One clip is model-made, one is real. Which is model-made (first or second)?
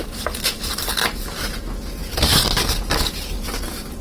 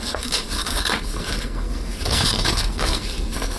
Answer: second